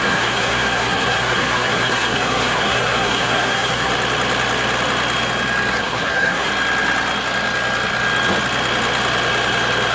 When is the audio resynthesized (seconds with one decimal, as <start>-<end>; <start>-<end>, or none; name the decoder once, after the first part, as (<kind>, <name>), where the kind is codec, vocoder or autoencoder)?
0.0-3.9 (codec, SNAC); 5.7-6.5